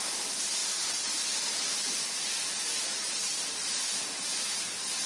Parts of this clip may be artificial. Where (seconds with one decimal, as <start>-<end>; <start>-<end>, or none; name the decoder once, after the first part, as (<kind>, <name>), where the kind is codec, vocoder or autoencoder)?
none

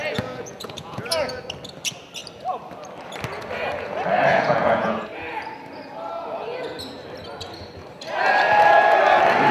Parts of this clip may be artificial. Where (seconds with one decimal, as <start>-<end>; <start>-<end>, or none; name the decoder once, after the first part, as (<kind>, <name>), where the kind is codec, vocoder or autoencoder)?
0.0-1.4 (vocoder, Vocos); 4.3-5.1